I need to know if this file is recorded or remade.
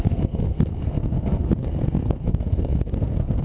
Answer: remade